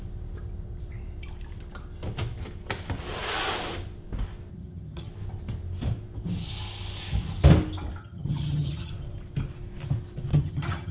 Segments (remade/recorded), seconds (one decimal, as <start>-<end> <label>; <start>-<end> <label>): 0.0-4.5 recorded; 4.5-5.1 remade; 5.1-8.0 recorded; 8.0-8.9 remade; 8.9-10.3 recorded; 10.3-10.9 remade